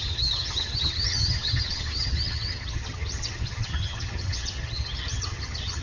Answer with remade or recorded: remade